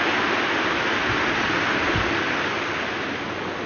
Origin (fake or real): real